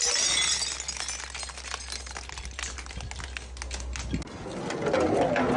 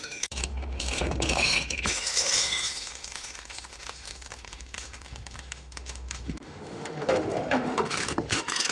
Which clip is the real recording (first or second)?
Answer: first